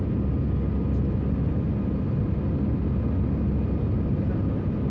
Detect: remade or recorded recorded